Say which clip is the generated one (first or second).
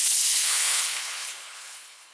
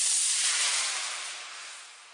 first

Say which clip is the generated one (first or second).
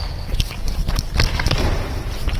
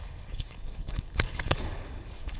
second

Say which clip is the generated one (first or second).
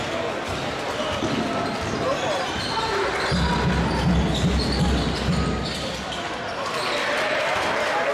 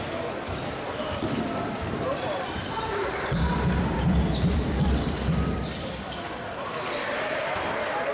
second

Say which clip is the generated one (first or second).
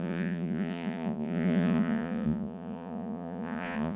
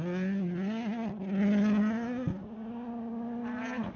first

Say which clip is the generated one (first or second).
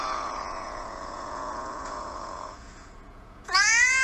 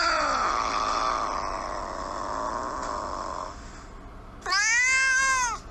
first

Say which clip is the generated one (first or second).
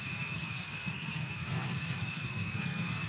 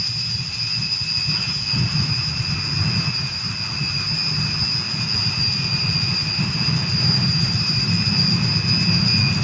first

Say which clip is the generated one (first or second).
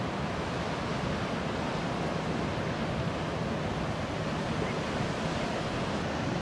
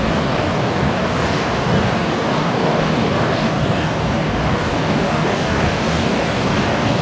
second